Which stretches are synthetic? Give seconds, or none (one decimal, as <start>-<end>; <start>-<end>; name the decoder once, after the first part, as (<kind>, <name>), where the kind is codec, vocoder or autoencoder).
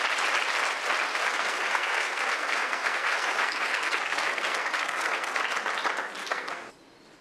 1.1-5.4 (codec, SNAC); 6.2-6.7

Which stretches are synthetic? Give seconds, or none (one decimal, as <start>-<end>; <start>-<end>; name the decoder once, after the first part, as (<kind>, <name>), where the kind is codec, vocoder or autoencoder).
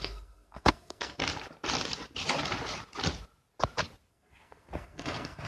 0.0-1.2 (codec, SNAC); 4.1-5.5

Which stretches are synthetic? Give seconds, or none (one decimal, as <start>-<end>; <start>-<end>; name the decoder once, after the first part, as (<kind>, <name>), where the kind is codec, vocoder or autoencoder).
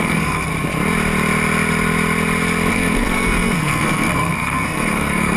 0.0-0.5 (codec, SNAC); 2.7-5.4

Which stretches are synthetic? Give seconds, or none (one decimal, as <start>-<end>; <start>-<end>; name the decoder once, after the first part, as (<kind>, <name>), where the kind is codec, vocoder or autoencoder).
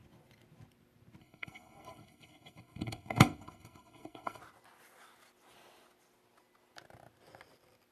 1.2-4.4 (codec, SNAC)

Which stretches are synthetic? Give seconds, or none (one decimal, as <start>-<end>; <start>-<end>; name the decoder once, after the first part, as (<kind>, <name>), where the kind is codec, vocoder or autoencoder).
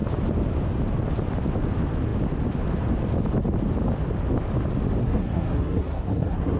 5.0-6.6 (codec, SNAC)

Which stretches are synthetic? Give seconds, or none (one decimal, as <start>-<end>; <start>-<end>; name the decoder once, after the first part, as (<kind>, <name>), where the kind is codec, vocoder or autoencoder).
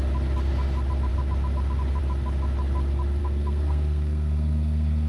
3.2-5.1 (codec, SNAC)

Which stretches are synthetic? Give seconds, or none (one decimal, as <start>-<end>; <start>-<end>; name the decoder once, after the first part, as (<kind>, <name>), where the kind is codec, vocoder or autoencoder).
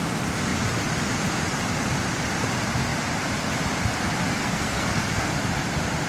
4.4-5.3 (codec, SNAC)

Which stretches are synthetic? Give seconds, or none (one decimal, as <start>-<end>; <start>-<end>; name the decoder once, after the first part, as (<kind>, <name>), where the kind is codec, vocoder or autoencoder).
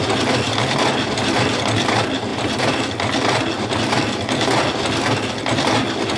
none